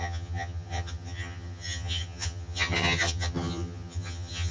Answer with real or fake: fake